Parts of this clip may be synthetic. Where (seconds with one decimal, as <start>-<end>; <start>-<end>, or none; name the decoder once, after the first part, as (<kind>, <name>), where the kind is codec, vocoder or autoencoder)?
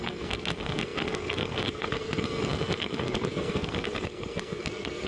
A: 0.0-5.1 (codec, SNAC)